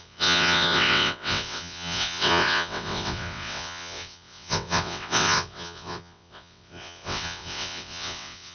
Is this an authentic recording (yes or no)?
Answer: no